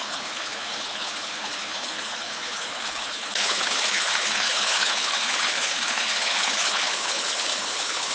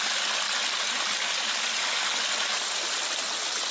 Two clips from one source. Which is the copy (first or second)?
first